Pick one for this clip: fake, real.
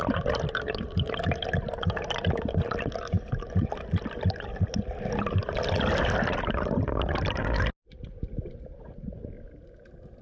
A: real